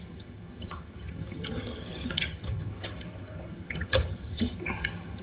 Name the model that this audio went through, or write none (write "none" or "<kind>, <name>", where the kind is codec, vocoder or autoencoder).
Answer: vocoder, HiFi-GAN